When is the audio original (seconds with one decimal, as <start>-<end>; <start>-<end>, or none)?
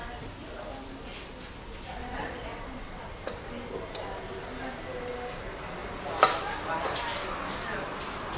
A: 0.0-2.0; 3.0-8.4